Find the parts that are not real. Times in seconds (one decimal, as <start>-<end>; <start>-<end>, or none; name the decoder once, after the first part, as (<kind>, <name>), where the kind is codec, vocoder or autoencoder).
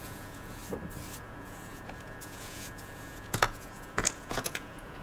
0.0-0.6 (vocoder, Vocos); 1.2-5.0